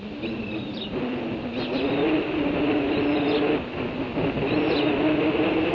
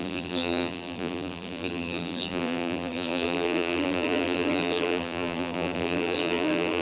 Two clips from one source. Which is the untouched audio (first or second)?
first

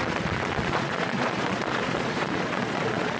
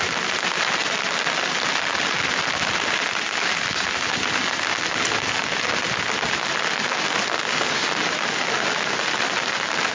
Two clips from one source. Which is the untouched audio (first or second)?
second